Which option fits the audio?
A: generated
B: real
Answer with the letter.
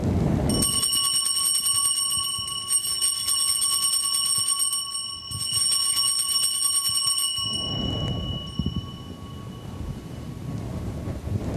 B